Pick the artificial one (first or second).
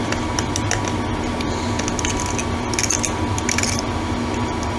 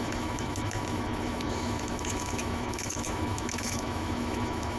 second